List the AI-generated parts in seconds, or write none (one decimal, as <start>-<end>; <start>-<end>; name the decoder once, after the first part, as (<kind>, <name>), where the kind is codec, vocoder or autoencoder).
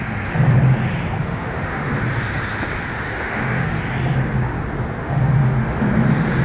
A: 1.2-1.9 (autoencoder, DAC-VAE); 2.9-3.8; 5.0-5.8